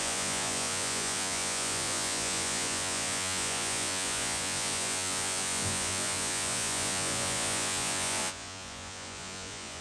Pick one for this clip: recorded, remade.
remade